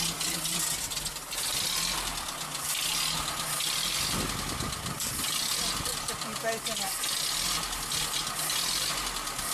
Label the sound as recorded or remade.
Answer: recorded